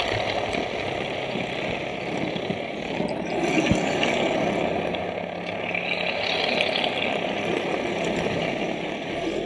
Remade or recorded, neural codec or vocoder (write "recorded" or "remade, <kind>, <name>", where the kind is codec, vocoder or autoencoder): recorded